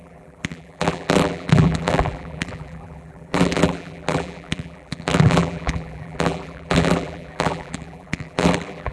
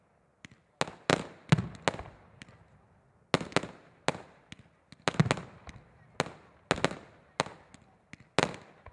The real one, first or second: second